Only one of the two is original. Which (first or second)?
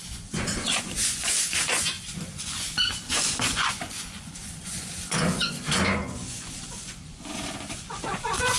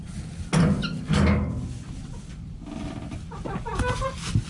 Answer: second